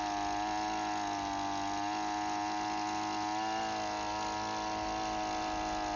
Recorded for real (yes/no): yes